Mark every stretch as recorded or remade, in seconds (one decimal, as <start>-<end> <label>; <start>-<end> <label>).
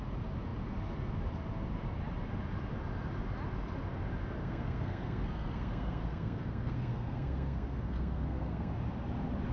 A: 0.0-4.4 recorded; 4.4-8.7 remade; 8.7-9.5 recorded